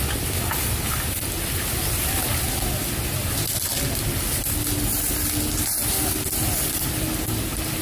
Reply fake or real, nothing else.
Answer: real